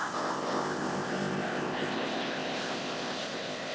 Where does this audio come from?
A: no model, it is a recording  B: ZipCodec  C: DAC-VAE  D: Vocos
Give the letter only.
B